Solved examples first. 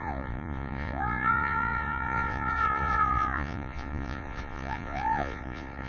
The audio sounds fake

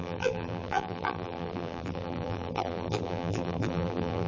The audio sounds fake